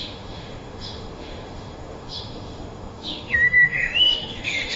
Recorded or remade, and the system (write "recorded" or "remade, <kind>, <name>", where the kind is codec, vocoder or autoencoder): remade, autoencoder, DAC-VAE